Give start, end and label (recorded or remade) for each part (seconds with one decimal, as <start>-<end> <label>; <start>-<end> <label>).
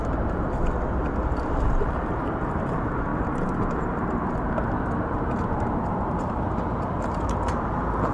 0.0-8.1 remade